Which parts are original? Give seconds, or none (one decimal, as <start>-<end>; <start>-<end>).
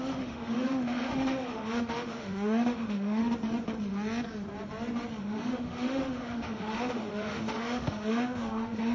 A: 3.2-5.2